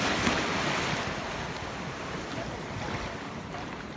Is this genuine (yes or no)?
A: yes